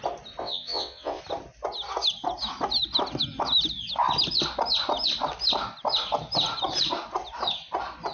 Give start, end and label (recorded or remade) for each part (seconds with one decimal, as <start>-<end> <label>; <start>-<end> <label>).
0.0-0.4 recorded; 0.4-1.2 remade; 1.2-8.1 recorded